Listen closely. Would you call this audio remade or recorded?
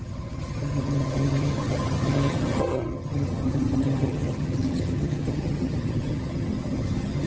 remade